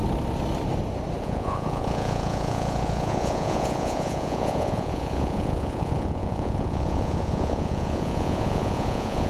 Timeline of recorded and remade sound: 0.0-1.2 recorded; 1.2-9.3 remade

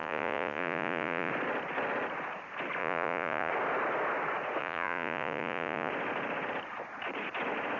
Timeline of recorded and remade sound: 0.0-1.3 remade; 1.3-2.8 recorded; 2.8-3.5 remade; 3.5-4.6 recorded; 4.6-5.9 remade; 5.9-7.8 recorded

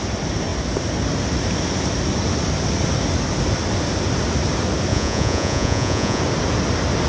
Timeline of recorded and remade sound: 0.0-4.9 recorded; 4.9-6.2 remade; 6.2-7.1 recorded

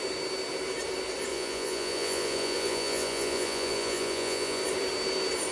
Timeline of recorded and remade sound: 0.0-1.3 recorded; 1.3-4.6 remade; 4.6-5.5 recorded